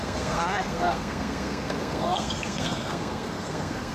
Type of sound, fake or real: fake